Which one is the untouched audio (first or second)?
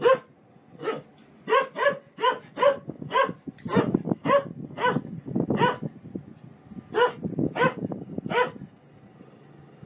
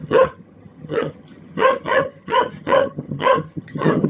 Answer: first